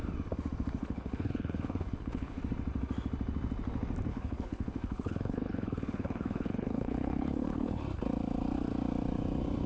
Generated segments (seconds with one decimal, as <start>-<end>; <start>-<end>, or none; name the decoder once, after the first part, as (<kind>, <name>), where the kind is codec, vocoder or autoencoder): 0.8-2.4 (codec, HILCodec); 4.1-7.8